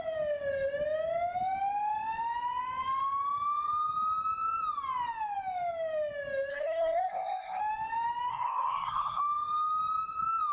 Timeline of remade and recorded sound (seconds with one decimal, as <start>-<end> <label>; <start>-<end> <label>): 0.0-6.5 recorded; 6.5-7.6 remade; 7.6-8.3 recorded; 8.3-9.2 remade; 9.2-10.5 recorded